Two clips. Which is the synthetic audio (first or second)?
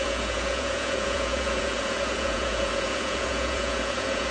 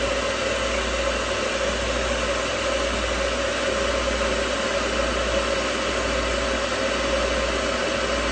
first